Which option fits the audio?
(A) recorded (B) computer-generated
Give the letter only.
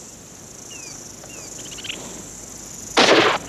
A